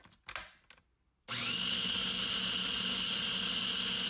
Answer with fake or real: real